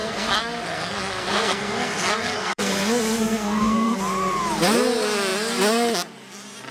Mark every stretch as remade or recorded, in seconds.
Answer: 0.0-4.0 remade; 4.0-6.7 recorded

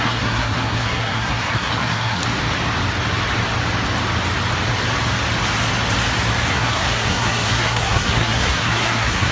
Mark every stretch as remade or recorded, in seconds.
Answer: 0.0-2.2 remade; 2.2-6.5 recorded; 6.5-9.3 remade

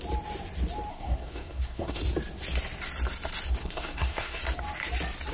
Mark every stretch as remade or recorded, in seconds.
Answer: 0.0-0.9 recorded; 0.9-2.0 remade; 2.0-3.6 recorded; 3.6-4.4 remade; 4.4-5.3 recorded